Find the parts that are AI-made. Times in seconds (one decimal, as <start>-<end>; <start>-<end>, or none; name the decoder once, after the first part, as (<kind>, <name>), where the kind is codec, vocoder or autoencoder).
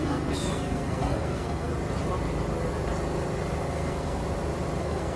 0.0-1.7 (codec, SNAC); 3.7-4.2; 4.8-5.2